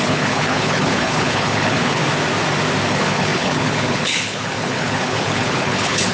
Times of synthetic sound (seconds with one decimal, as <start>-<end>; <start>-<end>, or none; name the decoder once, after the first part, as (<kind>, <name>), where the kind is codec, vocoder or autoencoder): 0.0-2.0 (codec, HILCodec); 2.9-6.1